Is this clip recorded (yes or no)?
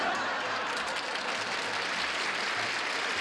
yes